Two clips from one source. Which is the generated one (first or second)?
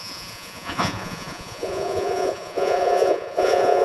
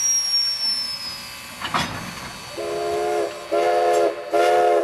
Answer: first